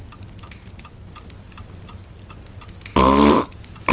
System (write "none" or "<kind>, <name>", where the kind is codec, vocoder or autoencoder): vocoder, BigVGAN v2